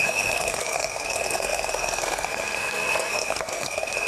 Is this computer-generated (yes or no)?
yes